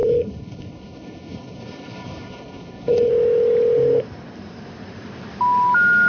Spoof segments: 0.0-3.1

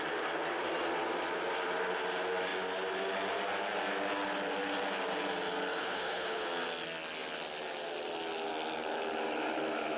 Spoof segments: 5.8-6.5

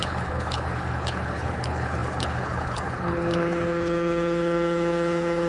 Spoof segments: 0.0-5.5

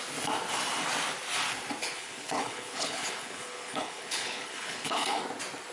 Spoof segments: 1.8-5.2